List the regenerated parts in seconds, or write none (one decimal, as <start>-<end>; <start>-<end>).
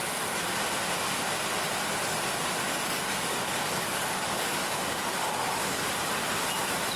2.7-5.8